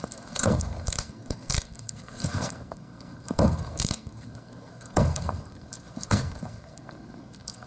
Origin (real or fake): fake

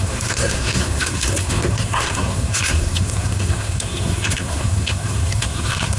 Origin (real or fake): fake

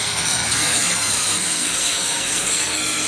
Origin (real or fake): fake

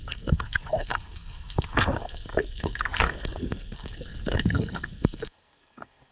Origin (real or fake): fake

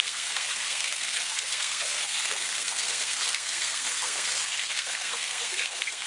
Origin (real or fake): fake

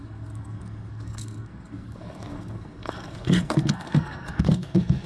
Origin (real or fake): fake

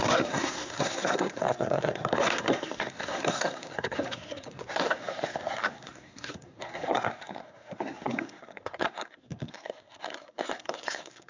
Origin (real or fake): fake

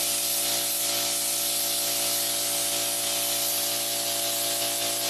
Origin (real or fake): real